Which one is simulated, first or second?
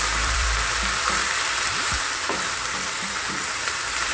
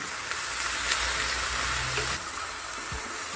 first